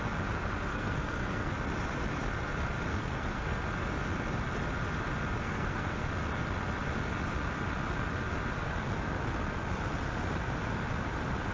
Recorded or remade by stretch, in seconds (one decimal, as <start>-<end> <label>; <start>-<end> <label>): 0.0-0.7 recorded; 0.7-1.5 remade; 1.5-2.9 recorded; 2.9-3.6 remade; 3.6-5.4 recorded; 5.4-6.1 remade; 6.1-11.5 recorded